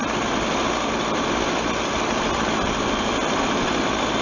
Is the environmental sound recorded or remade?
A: recorded